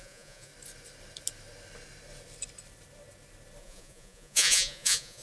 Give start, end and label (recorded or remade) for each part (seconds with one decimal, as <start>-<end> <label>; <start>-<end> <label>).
0.0-0.5 remade; 0.5-3.6 recorded; 3.6-5.2 remade

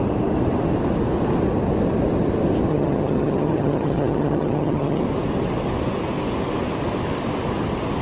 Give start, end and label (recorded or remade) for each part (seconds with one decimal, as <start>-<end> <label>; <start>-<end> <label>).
0.0-2.7 recorded; 2.7-5.0 remade; 5.0-8.0 recorded

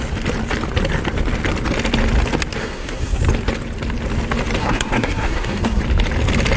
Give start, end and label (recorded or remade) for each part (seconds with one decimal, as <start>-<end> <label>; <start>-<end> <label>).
0.0-2.6 recorded; 2.6-3.2 remade; 3.2-4.6 recorded; 4.6-5.8 remade; 5.8-6.6 recorded